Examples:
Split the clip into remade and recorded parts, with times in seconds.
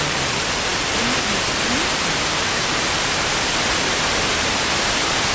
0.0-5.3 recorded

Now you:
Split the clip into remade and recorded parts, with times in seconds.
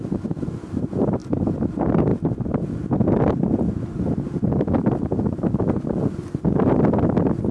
0.0-7.5 recorded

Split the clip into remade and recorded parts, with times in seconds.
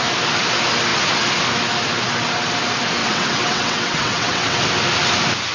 0.0-3.0 recorded; 3.0-4.6 remade; 4.6-5.5 recorded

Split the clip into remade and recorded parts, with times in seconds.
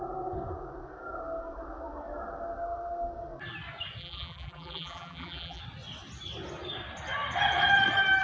0.0-4.0 recorded; 4.0-5.6 remade; 5.6-8.2 recorded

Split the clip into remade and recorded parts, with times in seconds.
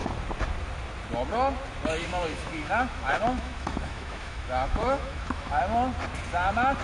0.0-2.0 recorded; 2.0-5.6 remade; 5.6-6.8 recorded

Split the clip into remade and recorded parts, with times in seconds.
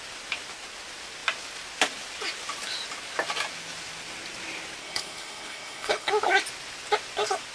0.0-4.8 recorded; 4.8-6.1 remade; 6.1-7.5 recorded